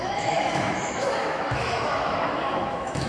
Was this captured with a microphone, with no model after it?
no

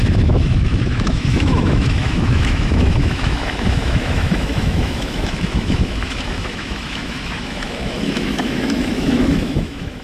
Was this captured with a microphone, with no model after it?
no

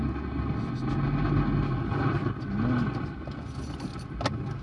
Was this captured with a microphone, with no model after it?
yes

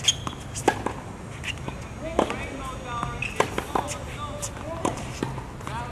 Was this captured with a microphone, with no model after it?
yes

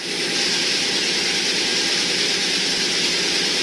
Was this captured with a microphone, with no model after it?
yes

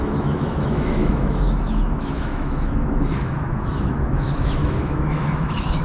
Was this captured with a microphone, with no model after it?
no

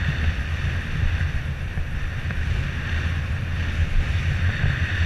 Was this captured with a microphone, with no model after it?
yes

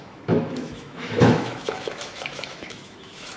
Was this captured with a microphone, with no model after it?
no